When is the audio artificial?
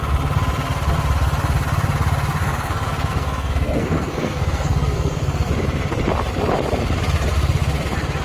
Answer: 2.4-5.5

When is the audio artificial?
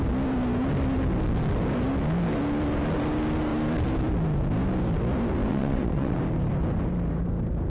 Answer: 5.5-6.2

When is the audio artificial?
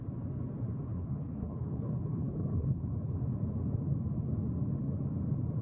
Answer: 0.9-3.2